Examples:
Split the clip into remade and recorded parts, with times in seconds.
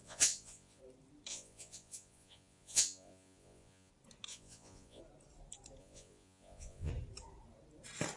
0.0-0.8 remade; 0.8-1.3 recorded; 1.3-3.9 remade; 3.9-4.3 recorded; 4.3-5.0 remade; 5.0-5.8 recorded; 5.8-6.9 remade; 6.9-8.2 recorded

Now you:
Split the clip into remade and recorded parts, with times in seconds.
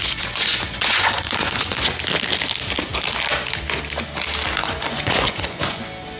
0.0-1.9 remade; 1.9-4.6 recorded; 4.6-5.8 remade; 5.8-6.2 recorded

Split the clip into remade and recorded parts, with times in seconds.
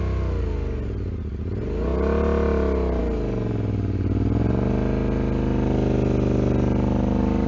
0.0-7.5 recorded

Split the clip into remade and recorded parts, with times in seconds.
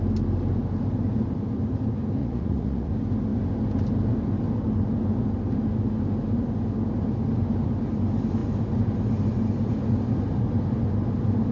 0.0-2.2 recorded; 2.2-2.9 remade; 2.9-11.5 recorded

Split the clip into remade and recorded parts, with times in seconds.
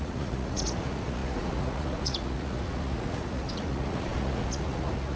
0.0-5.2 remade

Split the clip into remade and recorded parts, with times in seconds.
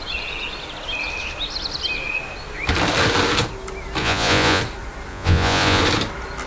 0.0-4.0 recorded; 4.0-4.6 remade; 4.6-5.1 recorded; 5.1-5.8 remade; 5.8-6.5 recorded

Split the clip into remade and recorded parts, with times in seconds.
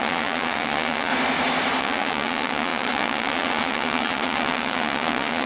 0.0-1.1 remade; 1.1-1.8 recorded; 1.8-5.5 remade